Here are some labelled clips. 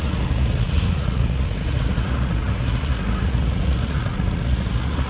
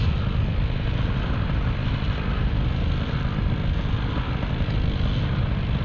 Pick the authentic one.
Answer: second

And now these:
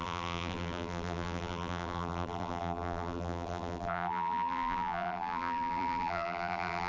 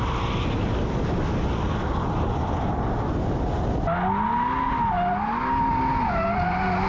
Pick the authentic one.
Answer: second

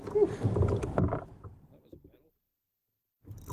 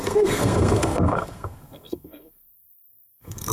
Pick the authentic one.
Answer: first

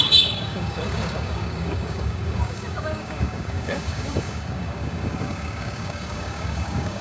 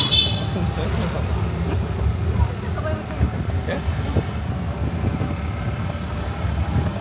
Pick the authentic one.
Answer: second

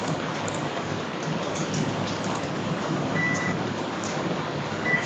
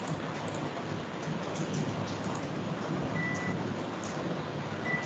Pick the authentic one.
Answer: second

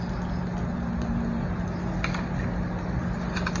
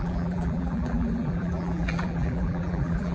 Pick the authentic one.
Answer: first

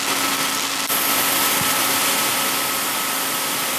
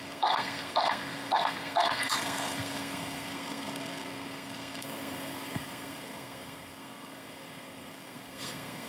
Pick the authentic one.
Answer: first